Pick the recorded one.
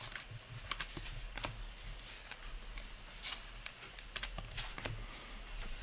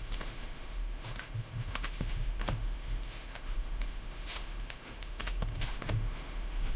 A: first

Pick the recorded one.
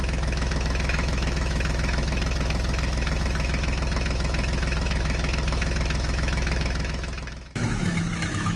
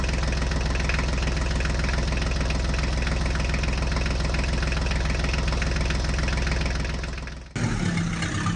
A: second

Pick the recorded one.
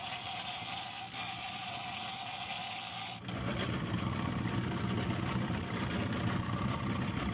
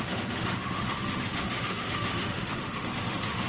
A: first